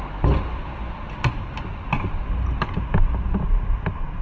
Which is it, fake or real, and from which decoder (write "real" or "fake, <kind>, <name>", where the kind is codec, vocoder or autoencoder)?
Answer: real